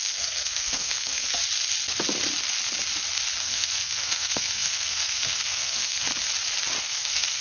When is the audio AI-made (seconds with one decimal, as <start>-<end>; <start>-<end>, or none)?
0.0-1.4; 3.4-6.1; 6.8-7.4